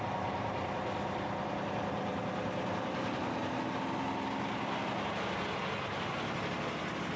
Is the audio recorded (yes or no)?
yes